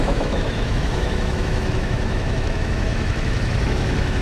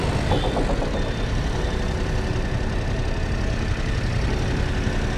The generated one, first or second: first